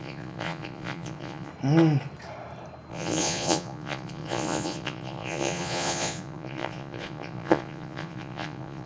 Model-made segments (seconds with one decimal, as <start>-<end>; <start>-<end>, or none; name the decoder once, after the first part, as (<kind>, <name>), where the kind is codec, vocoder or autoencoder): 0.0-1.5 (vocoder, Vocos); 2.9-8.9